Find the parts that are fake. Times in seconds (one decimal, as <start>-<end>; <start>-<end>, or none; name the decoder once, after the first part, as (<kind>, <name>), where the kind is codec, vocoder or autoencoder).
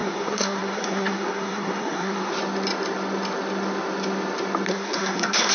0.0-2.3 (codec, SNAC); 4.7-5.5